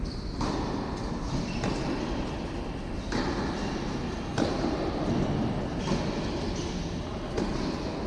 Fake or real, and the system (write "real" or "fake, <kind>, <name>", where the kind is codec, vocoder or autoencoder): real